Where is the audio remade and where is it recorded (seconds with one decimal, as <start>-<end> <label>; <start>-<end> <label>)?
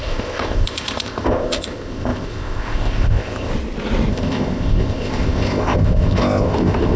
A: 0.0-3.5 remade; 3.5-4.1 recorded; 4.1-7.0 remade